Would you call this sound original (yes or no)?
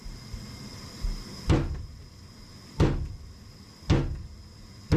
yes